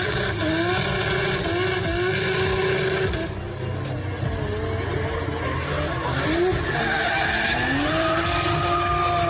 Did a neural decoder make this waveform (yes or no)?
no